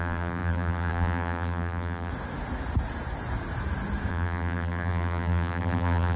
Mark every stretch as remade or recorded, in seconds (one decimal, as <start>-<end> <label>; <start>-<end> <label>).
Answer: 0.0-2.1 remade; 2.1-4.1 recorded; 4.1-6.2 remade